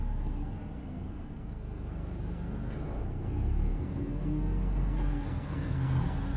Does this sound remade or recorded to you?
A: remade